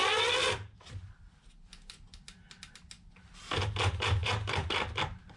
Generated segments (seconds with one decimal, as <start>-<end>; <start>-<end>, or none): none